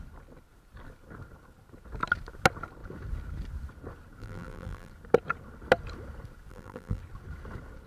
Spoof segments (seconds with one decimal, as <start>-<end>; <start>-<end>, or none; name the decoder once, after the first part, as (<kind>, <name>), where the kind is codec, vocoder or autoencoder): 4.2-4.9 (vocoder, BigVGAN v2); 6.5-7.0